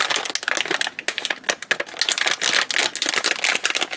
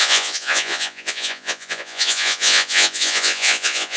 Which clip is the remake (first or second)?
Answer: second